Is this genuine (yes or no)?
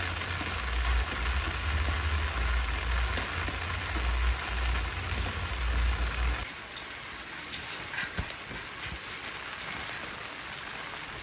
yes